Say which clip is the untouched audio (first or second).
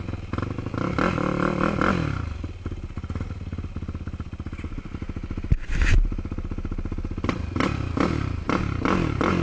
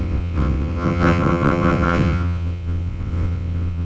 first